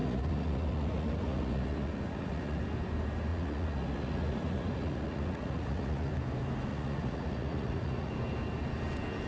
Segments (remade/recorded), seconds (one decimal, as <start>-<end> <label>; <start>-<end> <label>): 0.0-2.6 remade; 2.6-3.3 recorded; 3.3-6.1 remade; 6.1-6.7 recorded; 6.7-8.1 remade; 8.1-9.3 recorded

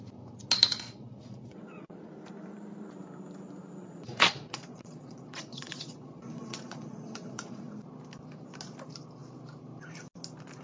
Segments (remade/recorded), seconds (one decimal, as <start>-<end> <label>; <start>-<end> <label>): 0.0-0.7 recorded; 0.7-2.1 remade; 2.1-3.8 recorded; 3.8-7.7 remade; 7.7-10.6 recorded

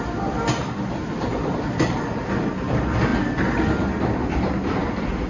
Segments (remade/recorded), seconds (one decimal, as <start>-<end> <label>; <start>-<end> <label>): 0.0-5.3 recorded

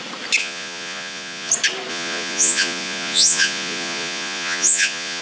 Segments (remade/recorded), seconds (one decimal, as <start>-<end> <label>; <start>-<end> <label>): 0.0-0.4 recorded; 0.4-1.5 remade; 1.5-1.9 recorded; 1.9-5.2 remade

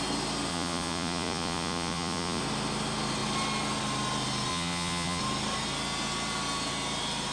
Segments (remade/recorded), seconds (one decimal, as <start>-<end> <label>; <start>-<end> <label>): 0.0-0.5 recorded; 0.5-2.4 remade; 2.4-4.5 recorded; 4.5-5.2 remade; 5.2-7.3 recorded